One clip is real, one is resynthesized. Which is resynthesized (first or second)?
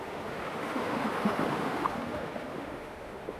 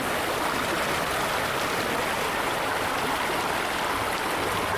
first